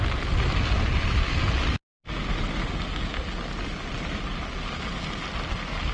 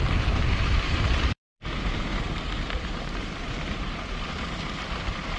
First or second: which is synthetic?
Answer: second